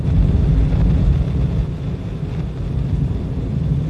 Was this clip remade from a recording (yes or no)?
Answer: no